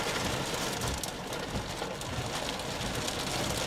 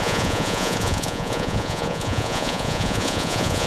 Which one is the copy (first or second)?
second